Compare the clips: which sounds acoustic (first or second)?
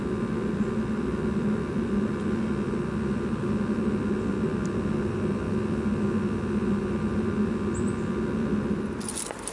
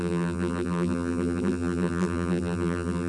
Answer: first